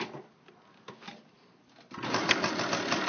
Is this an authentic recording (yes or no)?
yes